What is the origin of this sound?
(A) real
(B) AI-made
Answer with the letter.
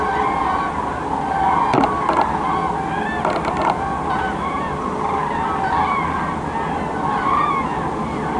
A